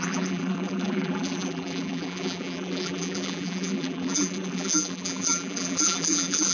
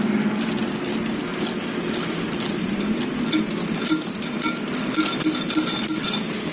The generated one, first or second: first